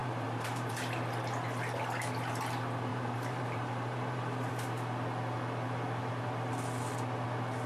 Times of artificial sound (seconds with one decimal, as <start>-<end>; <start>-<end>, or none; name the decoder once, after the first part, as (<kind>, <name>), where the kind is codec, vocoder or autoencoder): 0.0-0.7 (vocoder, BigVGAN v2); 2.9-4.5